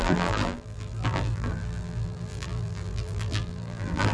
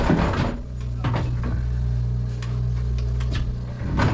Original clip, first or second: second